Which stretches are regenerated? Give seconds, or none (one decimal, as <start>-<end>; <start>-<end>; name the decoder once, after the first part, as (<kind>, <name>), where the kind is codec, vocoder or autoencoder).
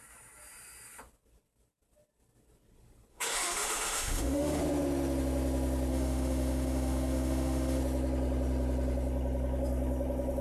3.1-4.6 (autoencoder, DAC-VAE); 5.9-7.8